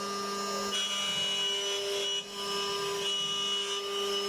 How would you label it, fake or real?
real